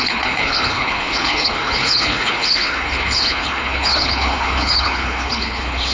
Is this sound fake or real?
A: fake